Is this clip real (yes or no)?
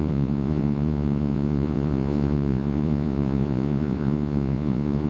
no